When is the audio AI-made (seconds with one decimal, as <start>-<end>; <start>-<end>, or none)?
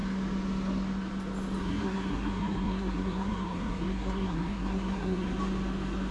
1.6-5.3